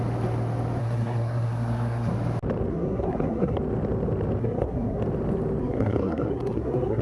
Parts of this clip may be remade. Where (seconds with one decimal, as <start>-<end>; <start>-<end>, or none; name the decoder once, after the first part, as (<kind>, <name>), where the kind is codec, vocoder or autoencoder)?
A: 0.8-2.1 (codec, SNAC); 2.7-3.6; 4.4-5.0; 5.6-7.0